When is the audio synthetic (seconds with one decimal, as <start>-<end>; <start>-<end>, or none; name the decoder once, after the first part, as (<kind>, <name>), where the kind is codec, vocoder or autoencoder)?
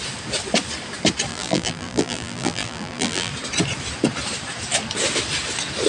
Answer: 1.3-3.3 (vocoder, BigVGAN v2)